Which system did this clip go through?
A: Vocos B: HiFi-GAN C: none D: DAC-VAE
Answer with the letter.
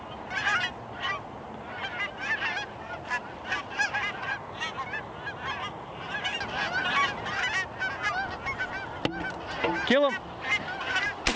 C